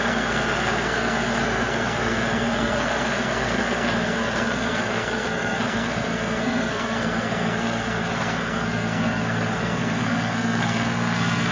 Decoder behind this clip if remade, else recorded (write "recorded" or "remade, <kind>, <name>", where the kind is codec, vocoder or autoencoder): remade, codec, SNAC